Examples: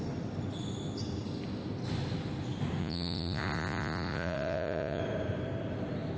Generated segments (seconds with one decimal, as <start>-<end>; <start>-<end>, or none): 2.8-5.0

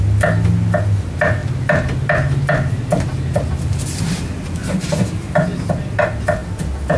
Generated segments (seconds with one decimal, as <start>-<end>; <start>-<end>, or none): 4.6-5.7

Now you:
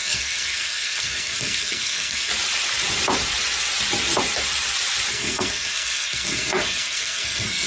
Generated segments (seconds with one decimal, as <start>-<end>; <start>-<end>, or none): 0.0-2.3; 5.1-7.7

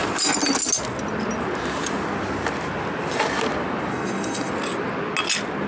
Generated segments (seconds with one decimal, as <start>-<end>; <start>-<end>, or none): 3.9-4.5